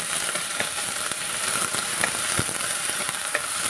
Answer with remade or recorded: remade